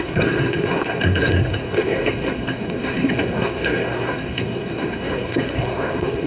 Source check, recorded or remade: remade